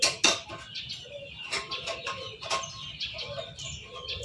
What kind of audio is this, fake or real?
real